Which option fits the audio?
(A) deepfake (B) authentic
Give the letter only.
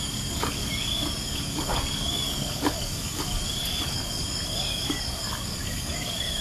A